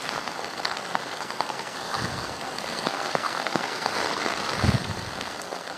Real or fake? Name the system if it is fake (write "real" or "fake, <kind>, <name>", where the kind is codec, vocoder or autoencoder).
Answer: fake, codec, SNAC